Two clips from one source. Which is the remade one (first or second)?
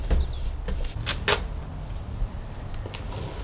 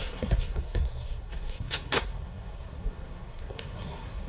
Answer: second